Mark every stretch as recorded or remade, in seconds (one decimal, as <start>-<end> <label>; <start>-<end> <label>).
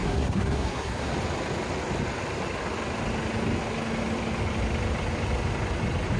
0.0-1.1 remade; 1.1-6.2 recorded